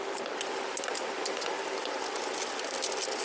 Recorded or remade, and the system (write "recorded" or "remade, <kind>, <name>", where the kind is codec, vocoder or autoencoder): recorded